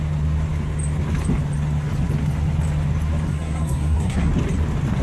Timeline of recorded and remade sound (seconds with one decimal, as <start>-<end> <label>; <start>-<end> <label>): 0.0-3.3 recorded; 3.3-4.3 remade; 4.3-5.0 recorded